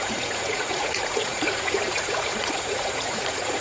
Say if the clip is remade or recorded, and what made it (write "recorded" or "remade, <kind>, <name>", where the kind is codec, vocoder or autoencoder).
remade, vocoder, Vocos